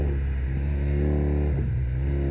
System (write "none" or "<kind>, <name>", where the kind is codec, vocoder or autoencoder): none